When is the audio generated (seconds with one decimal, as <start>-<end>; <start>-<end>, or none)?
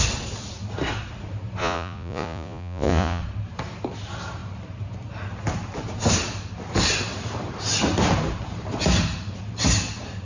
1.6-3.2